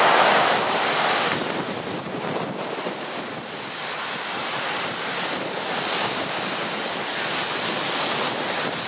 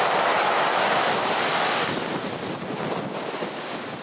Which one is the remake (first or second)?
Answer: first